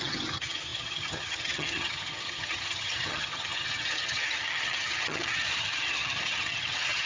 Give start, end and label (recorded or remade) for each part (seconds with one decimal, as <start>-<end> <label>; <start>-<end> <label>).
0.0-7.1 remade